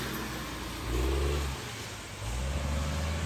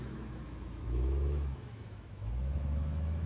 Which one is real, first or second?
first